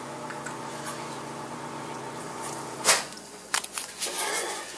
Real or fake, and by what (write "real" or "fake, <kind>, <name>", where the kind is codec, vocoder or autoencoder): fake, vocoder, Vocos